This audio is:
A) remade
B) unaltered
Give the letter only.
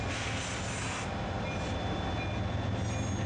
B